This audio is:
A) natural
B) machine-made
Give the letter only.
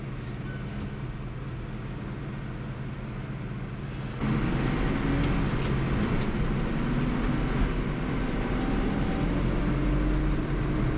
A